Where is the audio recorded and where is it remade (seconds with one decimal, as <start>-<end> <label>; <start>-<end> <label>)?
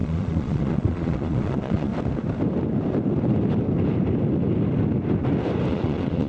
0.0-1.9 remade; 1.9-5.7 recorded; 5.7-6.3 remade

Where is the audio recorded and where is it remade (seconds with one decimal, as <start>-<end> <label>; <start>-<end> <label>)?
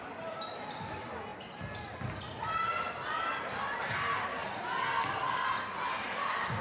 0.0-6.6 recorded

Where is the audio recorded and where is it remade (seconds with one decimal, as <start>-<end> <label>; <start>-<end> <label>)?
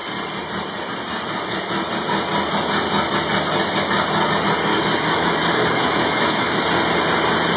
0.0-4.7 recorded; 4.7-6.6 remade; 6.6-7.6 recorded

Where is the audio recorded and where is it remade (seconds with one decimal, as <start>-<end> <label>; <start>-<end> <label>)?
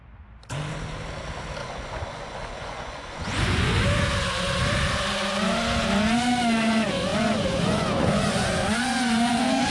0.0-1.6 recorded; 1.6-3.8 remade; 3.8-7.1 recorded; 7.1-9.7 remade